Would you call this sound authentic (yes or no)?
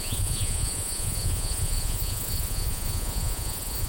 no